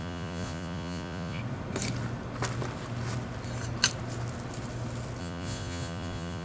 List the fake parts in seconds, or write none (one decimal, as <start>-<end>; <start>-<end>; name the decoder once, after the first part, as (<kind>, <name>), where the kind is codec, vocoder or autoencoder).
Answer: 0.0-1.4 (vocoder, Vocos); 5.2-6.4